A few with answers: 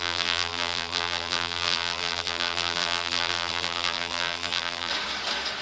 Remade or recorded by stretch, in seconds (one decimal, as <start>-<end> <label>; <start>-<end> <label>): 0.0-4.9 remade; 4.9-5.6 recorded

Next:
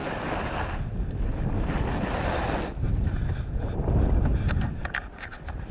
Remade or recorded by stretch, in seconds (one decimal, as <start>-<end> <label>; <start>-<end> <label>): 0.0-5.7 recorded

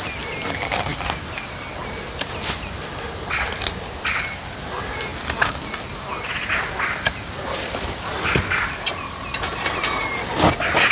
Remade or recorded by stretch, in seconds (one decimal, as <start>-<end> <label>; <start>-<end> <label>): 0.0-10.9 recorded

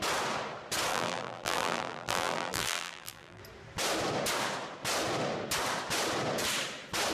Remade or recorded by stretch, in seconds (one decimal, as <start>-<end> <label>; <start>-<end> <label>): 0.0-0.9 recorded; 0.9-3.4 remade; 3.4-7.1 recorded